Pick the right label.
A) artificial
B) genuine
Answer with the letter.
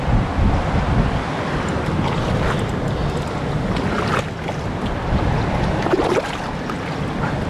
B